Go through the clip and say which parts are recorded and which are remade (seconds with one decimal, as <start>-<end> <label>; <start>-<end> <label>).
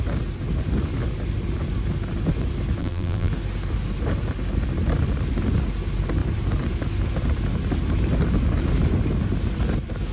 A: 0.0-2.8 recorded; 2.8-3.3 remade; 3.3-10.1 recorded